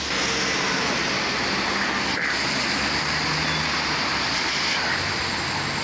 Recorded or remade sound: recorded